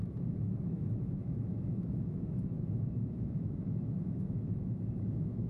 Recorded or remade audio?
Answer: remade